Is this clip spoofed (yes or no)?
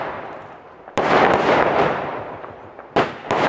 yes